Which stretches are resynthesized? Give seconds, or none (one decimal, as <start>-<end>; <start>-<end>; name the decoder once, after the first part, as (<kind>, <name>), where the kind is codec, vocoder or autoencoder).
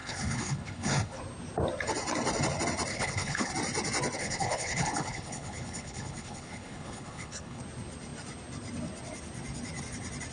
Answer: 0.0-1.2 (codec, HILCodec); 2.9-3.5; 4.2-7.6